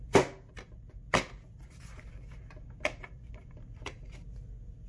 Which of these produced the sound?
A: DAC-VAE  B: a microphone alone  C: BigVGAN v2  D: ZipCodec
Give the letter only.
B